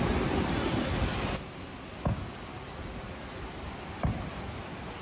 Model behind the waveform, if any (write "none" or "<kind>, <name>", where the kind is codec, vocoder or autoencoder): none